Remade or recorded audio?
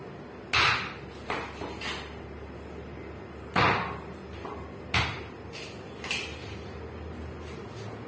recorded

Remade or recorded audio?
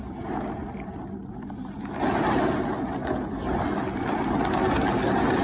recorded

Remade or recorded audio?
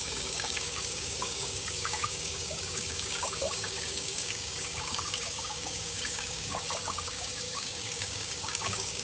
remade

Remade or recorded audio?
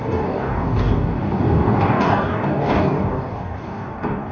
remade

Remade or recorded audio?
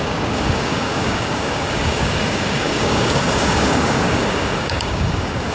remade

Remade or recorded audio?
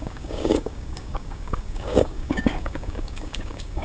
remade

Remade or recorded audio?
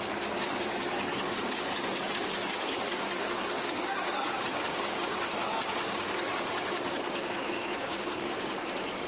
remade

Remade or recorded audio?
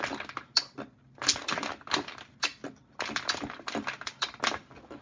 recorded